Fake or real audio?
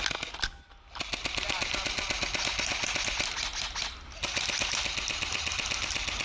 real